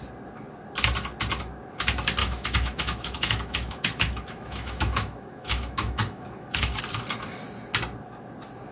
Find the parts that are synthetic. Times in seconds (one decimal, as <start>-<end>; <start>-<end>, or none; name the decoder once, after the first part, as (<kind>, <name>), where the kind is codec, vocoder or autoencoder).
2.2-6.8 (autoencoder, DAC-VAE)